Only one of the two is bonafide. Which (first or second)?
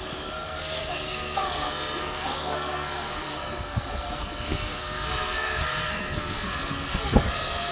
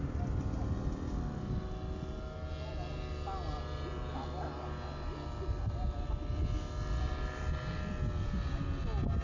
second